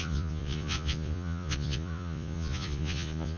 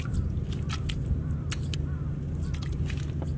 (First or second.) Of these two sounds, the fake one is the first